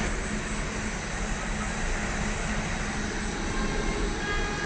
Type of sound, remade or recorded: recorded